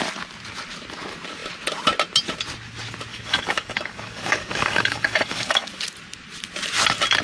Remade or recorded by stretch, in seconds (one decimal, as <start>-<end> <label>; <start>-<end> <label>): 0.0-3.1 recorded; 3.1-5.7 remade; 5.7-7.2 recorded